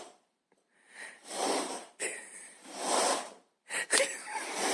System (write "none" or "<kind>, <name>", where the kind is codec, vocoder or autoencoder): vocoder, BigVGAN v2